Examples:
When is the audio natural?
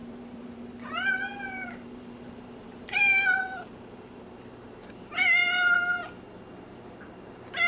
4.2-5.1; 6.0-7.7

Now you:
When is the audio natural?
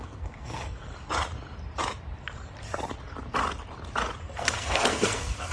0.9-4.2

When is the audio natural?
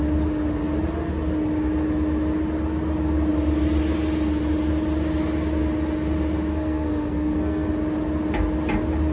0.0-6.5; 7.7-9.1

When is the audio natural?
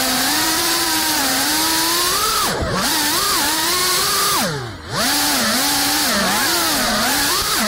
1.5-2.0; 3.8-7.3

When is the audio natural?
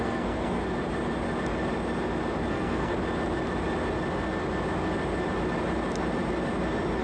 0.6-2.5; 2.9-7.0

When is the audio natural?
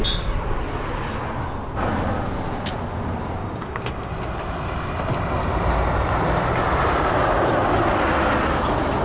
0.0-3.4; 4.1-9.0